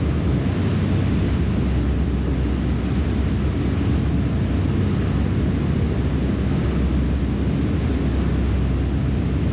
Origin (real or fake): real